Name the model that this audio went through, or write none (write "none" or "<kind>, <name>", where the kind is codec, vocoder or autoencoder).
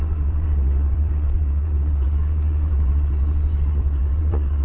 vocoder, WaveNeXt